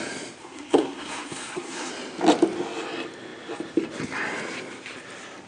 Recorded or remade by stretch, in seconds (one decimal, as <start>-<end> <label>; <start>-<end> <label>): 0.0-0.4 recorded; 0.4-1.9 remade; 1.9-5.5 recorded